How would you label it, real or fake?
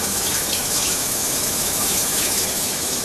fake